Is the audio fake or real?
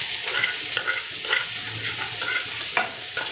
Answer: real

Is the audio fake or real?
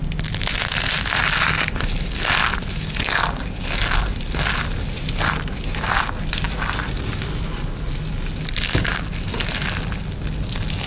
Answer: real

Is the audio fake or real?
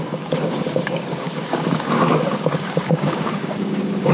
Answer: fake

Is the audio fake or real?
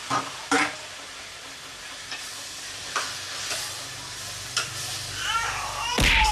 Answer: fake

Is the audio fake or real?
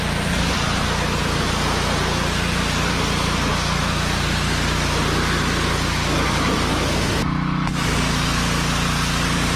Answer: real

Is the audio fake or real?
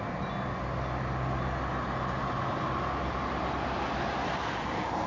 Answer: real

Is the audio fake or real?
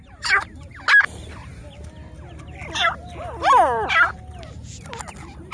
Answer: real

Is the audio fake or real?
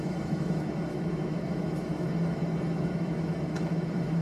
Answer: fake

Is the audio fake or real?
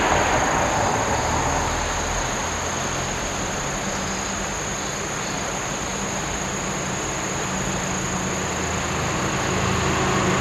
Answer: real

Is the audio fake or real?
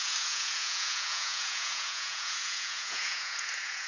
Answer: fake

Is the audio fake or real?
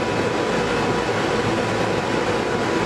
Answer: real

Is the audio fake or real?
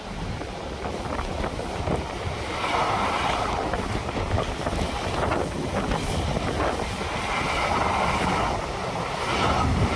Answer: real